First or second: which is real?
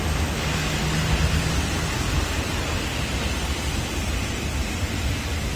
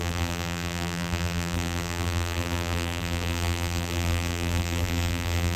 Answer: first